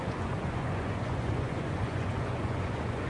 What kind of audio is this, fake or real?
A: fake